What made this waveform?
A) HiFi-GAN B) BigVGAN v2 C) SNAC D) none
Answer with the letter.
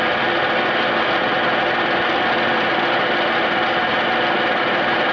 D